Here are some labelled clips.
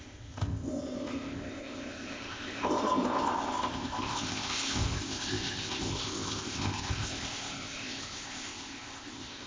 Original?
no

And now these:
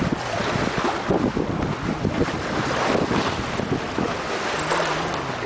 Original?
yes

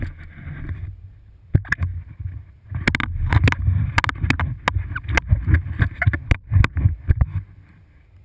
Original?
yes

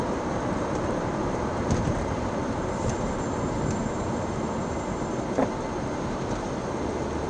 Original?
no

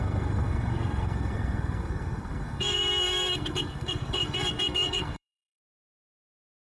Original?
no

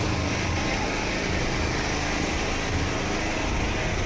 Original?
yes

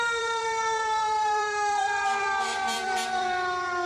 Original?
no